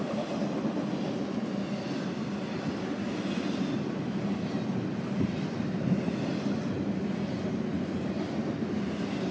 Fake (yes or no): no